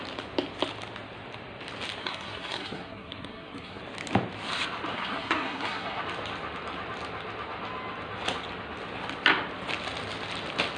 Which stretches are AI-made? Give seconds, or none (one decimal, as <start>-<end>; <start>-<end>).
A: 2.0-3.8; 4.9-6.0